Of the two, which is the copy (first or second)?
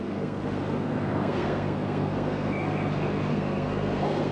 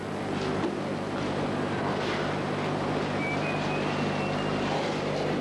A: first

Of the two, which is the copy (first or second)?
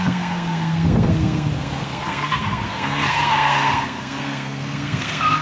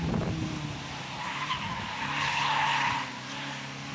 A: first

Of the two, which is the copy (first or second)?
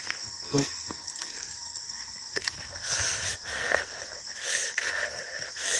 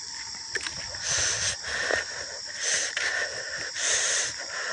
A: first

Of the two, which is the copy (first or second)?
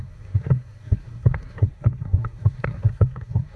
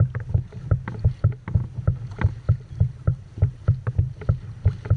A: first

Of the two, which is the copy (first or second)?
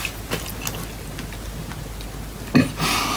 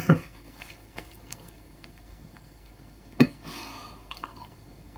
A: second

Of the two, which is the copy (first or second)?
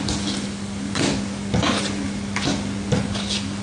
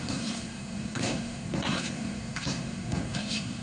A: second